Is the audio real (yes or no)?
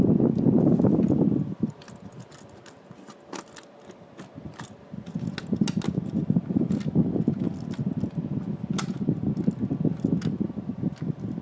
yes